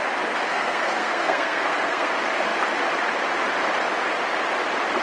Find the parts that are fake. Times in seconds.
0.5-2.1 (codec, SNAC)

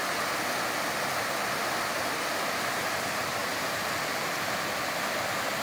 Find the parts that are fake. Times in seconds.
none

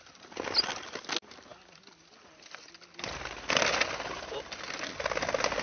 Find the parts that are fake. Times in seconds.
none

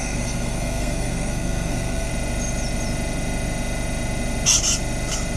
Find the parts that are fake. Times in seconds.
0.0-2.1 (codec, SNAC)